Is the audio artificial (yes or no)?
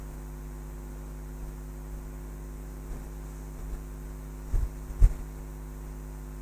no